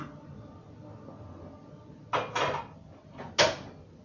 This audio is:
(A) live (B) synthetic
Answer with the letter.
A